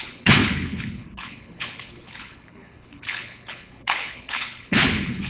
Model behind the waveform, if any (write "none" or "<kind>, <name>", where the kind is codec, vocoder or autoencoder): codec, HILCodec